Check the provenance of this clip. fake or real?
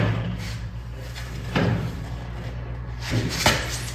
fake